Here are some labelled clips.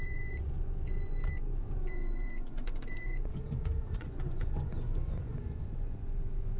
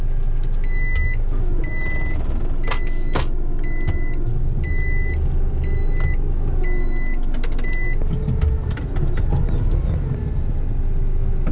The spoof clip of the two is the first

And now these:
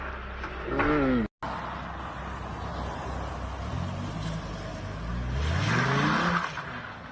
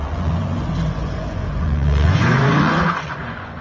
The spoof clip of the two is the second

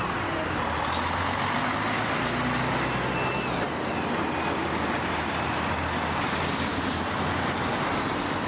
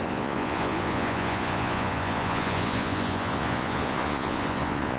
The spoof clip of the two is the second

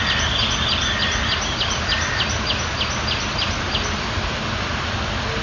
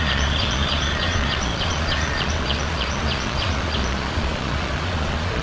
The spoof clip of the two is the second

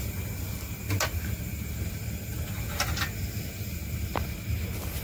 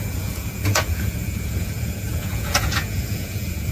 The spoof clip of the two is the second